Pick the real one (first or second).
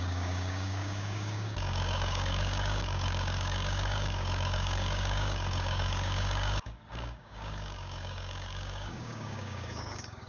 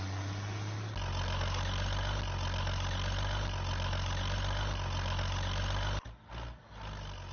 second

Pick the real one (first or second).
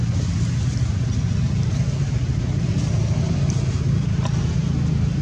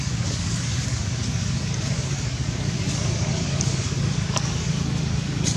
first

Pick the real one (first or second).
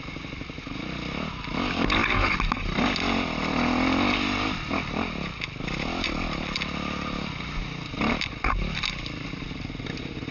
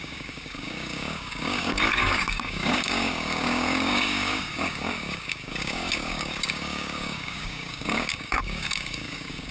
first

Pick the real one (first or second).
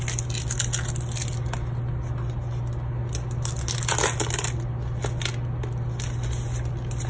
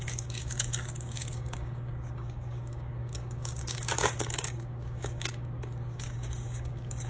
first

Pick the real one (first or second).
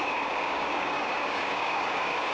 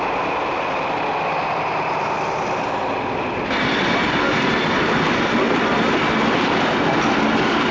second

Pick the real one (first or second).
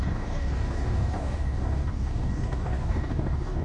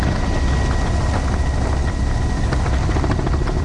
second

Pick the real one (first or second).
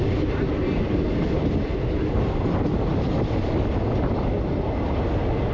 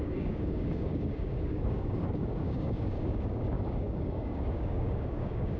first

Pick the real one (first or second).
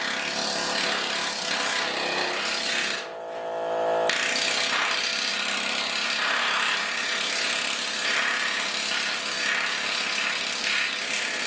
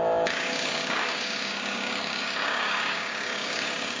first